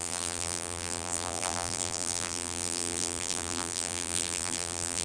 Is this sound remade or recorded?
remade